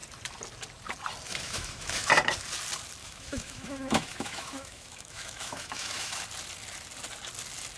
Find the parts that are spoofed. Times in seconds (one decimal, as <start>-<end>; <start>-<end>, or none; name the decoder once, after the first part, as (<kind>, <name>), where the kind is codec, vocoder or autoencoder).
1.3-2.1 (autoencoder, DAC-VAE); 3.0-6.2